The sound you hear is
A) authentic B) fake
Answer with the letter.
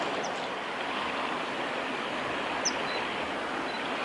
A